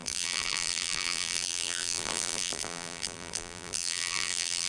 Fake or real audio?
fake